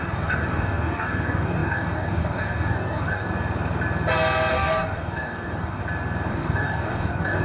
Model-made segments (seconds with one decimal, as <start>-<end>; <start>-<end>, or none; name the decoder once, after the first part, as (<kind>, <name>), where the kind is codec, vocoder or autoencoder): 0.0-3.3 (codec, DAC); 4.5-5.8; 6.3-7.4